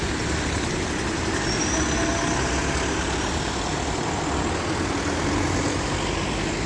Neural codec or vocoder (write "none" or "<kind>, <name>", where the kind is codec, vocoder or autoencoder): none